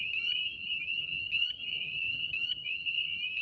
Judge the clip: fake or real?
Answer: fake